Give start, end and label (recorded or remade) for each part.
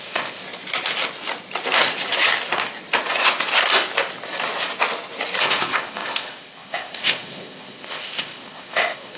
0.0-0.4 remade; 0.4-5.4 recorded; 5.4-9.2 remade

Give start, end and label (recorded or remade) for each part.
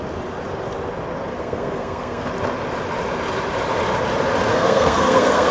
0.0-1.3 recorded; 1.3-2.3 remade; 2.3-4.5 recorded; 4.5-5.5 remade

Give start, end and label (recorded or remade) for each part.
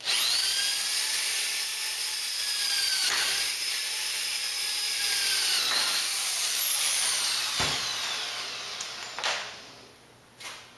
0.0-10.8 recorded